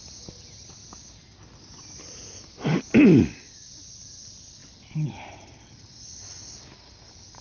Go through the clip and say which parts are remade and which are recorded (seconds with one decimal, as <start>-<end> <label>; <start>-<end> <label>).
0.0-7.4 recorded